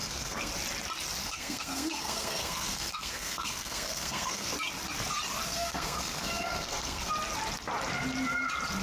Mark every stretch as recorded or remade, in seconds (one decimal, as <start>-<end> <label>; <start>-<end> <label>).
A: 0.0-0.5 remade; 0.5-1.2 recorded; 1.2-4.5 remade; 4.5-5.5 recorded; 5.5-7.1 remade; 7.1-8.8 recorded